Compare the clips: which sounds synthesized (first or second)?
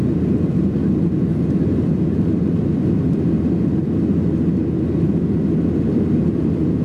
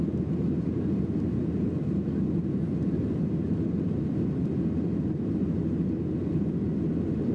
second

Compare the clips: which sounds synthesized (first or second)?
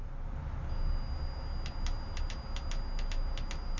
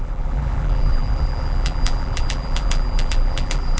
second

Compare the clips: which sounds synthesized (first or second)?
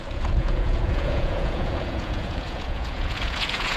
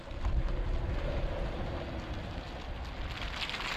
first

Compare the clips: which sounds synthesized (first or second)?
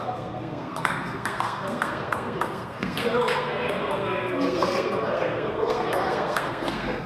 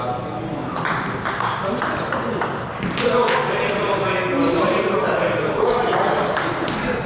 first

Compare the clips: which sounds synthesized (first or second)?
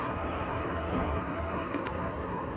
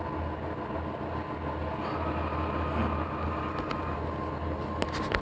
first